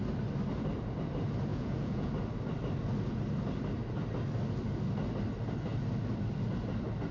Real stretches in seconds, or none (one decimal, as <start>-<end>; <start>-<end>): 0.0-1.5; 2.1-7.1